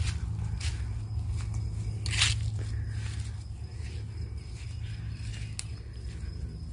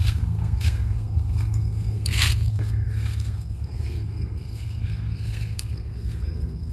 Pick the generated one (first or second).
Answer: second